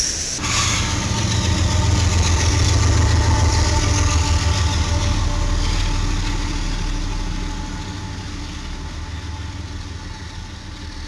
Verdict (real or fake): real